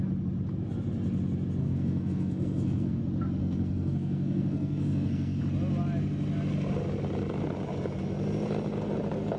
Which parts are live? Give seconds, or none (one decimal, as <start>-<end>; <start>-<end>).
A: 0.0-1.6; 3.0-3.4; 5.4-9.4